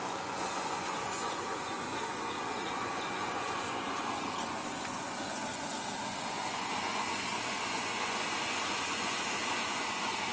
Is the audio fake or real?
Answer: fake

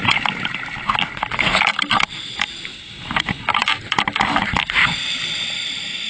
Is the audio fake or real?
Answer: real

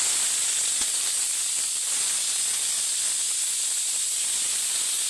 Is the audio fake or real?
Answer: real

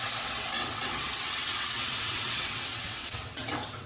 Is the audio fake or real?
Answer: fake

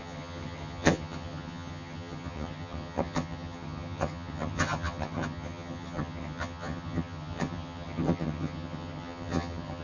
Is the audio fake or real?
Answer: fake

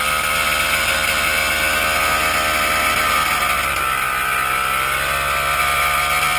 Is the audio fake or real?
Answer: real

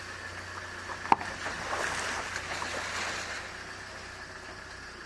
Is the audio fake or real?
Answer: real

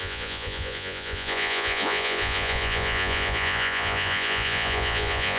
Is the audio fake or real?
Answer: fake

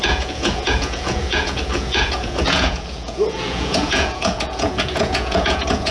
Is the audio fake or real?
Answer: fake